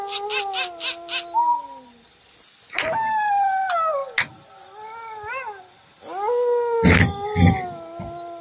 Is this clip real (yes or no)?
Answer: yes